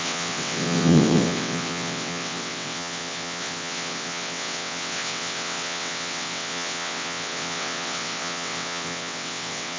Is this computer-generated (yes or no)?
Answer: yes